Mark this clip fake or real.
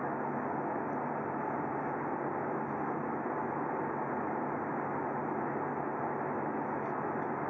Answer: real